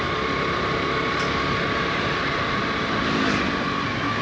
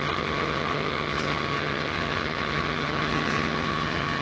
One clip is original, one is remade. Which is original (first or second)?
first